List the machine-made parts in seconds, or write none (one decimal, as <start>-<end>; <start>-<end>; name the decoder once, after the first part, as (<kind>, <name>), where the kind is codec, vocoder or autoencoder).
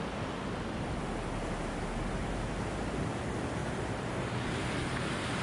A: 3.6-4.2 (vocoder, BigVGAN v2)